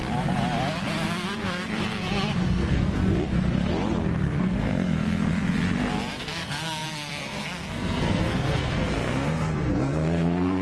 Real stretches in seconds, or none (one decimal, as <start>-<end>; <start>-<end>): 0.0-2.4; 3.0-4.4; 5.3-6.2